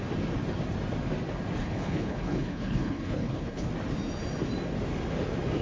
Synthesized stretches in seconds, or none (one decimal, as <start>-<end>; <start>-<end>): 1.6-3.7